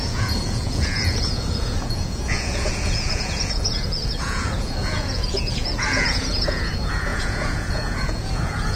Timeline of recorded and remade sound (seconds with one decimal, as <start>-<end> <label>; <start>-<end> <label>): 0.0-8.8 remade